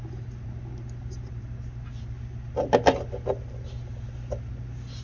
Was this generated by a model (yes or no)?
no